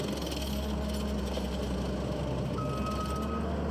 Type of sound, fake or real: real